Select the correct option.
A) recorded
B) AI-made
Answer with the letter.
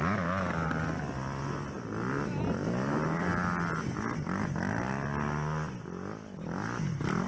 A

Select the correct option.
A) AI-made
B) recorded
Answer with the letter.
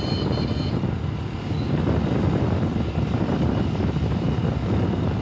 B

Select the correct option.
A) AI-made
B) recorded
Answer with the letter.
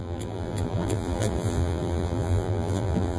A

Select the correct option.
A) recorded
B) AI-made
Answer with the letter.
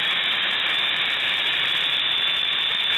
B